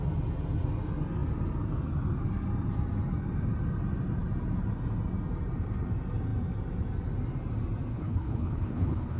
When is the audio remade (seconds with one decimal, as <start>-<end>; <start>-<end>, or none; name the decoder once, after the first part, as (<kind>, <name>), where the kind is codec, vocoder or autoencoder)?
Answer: 7.9-9.2 (codec, HILCodec)

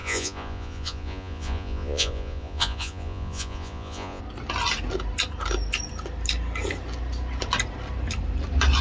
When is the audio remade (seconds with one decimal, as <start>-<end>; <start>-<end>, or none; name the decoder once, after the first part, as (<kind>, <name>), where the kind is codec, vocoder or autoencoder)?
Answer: 0.0-4.2 (vocoder, Vocos)

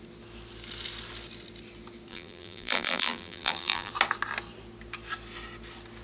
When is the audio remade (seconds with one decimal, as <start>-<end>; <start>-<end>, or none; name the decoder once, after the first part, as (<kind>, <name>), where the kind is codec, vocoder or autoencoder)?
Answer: 2.1-3.9 (vocoder, BigVGAN v2)

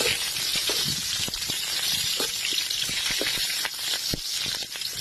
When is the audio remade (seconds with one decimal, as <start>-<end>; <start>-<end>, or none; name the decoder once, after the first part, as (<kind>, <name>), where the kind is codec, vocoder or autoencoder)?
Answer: 0.6-3.6 (vocoder, BigVGAN v2)

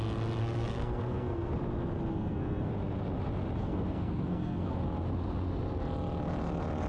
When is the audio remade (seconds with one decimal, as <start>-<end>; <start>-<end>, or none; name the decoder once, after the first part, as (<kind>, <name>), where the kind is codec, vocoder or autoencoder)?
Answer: 0.4-1.5 (codec, SNAC); 2.1-2.7; 3.6-4.8

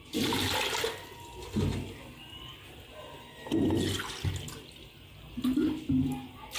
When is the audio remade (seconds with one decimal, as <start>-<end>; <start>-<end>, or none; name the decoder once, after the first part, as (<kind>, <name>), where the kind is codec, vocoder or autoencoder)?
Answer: none

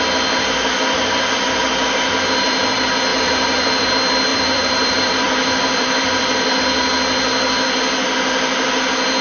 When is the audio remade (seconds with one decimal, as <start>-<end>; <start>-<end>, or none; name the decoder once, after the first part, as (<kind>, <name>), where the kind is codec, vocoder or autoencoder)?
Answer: 3.1-3.9 (vocoder, BigVGAN v2); 4.3-6.6